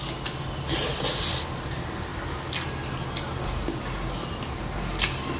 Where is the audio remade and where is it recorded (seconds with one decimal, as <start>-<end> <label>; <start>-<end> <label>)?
0.0-5.4 recorded

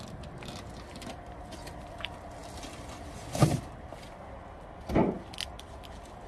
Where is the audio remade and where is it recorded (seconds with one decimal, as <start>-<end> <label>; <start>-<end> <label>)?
0.0-6.3 recorded

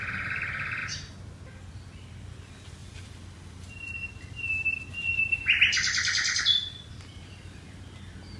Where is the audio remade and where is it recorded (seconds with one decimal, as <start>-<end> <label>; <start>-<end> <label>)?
0.0-2.8 recorded; 2.8-7.8 remade; 7.8-8.4 recorded

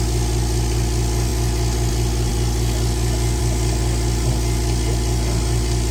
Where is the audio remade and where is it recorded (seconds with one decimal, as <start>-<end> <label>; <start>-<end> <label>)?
0.0-5.9 recorded

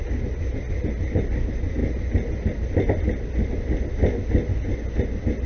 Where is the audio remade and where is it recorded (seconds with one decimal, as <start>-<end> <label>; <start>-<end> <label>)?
0.0-5.5 recorded

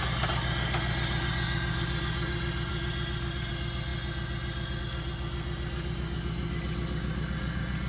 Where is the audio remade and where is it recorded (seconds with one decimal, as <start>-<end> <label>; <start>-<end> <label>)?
0.0-7.9 recorded